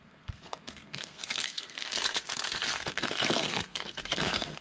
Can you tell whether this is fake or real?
fake